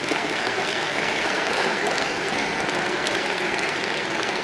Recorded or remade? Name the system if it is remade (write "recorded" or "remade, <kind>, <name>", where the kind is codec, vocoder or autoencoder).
remade, codec, SNAC